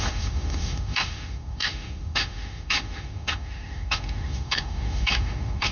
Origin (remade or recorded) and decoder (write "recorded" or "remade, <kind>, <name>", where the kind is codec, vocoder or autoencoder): remade, autoencoder, DAC-VAE